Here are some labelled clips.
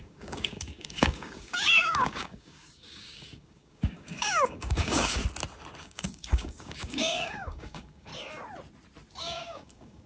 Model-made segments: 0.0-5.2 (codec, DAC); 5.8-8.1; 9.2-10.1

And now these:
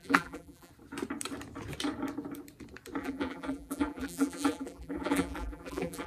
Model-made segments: 0.0-0.7 (vocoder, BigVGAN v2); 3.0-6.1

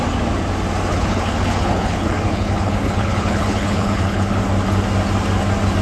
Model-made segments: 0.9-4.4 (codec, HILCodec)

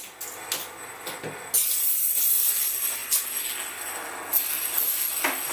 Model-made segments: none

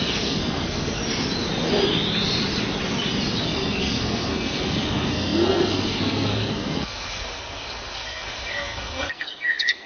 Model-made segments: 0.0-1.0 (codec, SNAC); 3.4-9.9

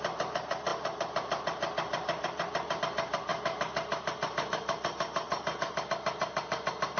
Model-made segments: 0.7-2.8 (vocoder, BigVGAN v2)